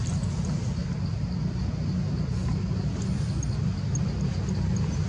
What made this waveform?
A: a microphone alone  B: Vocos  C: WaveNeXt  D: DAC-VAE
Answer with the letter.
A